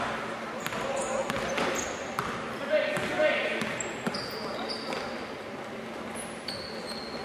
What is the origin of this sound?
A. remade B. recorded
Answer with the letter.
B